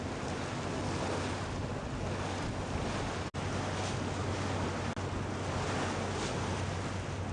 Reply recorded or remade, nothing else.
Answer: recorded